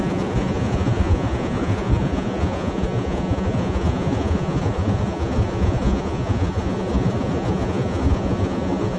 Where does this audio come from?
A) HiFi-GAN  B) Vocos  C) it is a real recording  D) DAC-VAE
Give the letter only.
B